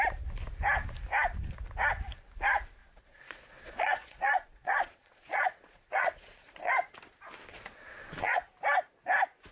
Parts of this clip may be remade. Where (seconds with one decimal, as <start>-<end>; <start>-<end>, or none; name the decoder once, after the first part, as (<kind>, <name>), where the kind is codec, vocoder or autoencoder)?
2.8-6.7 (vocoder, Vocos); 7.5-8.5